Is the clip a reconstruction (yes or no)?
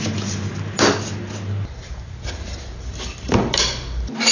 no